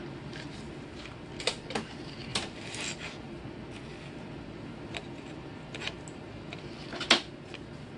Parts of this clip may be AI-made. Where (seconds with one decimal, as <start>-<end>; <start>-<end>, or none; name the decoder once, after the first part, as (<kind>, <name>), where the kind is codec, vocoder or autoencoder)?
none